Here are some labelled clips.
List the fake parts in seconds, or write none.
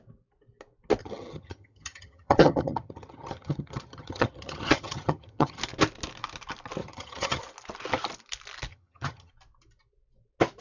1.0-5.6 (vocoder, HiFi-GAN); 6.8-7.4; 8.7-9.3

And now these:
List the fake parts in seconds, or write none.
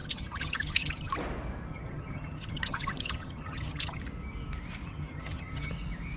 0.0-1.1 (vocoder, HiFi-GAN); 1.7-4.0; 4.9-5.7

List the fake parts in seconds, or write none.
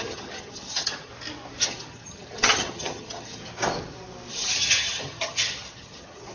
0.0-1.1 (vocoder, HiFi-GAN); 1.6-3.4; 4.3-6.3